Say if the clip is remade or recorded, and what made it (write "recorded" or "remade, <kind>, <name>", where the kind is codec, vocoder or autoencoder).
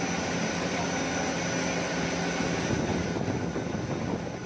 recorded